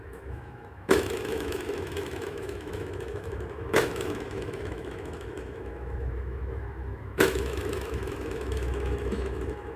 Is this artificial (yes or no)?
yes